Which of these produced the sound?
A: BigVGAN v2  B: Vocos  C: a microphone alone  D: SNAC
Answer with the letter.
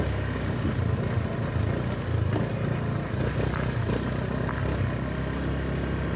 C